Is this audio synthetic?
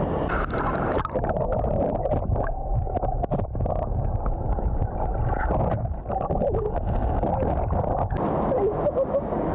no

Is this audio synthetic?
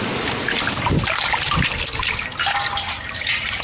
no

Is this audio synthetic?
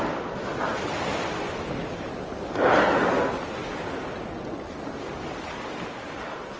no